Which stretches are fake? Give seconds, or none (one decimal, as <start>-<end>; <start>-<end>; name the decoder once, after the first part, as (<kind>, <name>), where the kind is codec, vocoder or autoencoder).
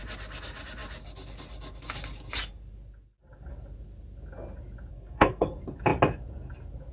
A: 4.9-5.5 (codec, SNAC)